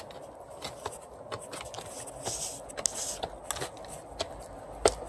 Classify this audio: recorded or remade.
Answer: recorded